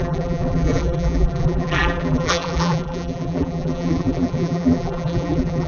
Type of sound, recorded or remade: remade